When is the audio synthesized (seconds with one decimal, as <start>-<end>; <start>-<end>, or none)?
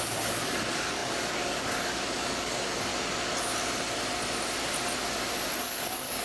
0.0-2.9; 5.6-6.2